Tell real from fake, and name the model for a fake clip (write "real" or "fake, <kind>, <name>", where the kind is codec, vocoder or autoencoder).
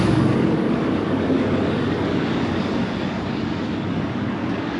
fake, codec, DAC